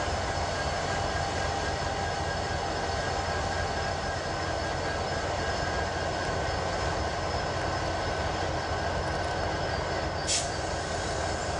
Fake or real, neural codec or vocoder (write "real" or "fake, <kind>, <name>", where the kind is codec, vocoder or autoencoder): real